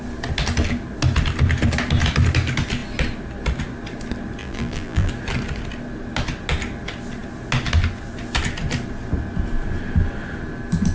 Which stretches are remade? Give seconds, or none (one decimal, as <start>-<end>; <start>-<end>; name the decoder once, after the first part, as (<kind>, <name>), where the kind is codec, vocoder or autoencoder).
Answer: 4.4-5.1 (vocoder, BigVGAN v2)